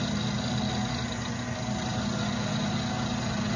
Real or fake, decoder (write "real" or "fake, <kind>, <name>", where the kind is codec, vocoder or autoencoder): real